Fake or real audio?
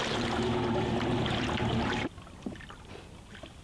real